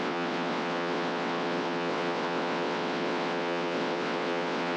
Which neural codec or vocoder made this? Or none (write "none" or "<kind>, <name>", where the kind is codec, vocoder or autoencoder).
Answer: vocoder, WaveNeXt